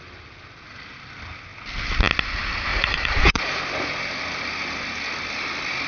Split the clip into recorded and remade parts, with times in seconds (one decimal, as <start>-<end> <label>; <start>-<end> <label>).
0.0-2.7 recorded; 2.7-3.6 remade; 3.6-5.9 recorded